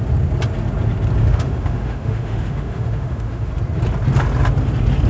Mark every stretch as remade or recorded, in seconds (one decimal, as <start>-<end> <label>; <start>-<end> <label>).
0.0-1.2 recorded; 1.2-3.5 remade; 3.5-5.1 recorded